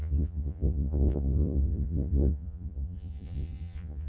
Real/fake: fake